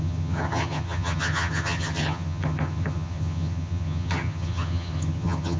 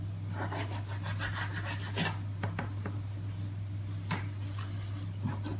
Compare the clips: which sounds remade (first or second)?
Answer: first